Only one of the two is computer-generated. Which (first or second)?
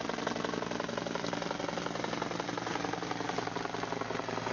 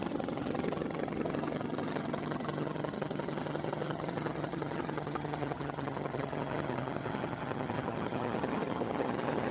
second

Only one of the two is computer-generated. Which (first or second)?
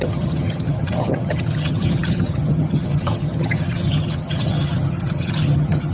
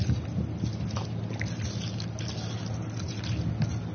first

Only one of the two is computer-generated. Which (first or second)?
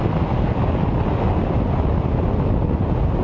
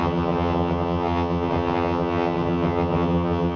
second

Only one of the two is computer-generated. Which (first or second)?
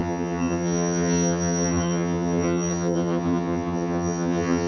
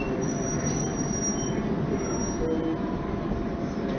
first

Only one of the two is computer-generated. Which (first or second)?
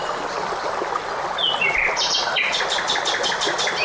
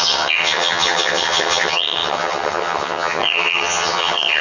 second